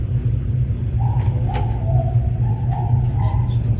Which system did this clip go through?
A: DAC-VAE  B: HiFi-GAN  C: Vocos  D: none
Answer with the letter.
D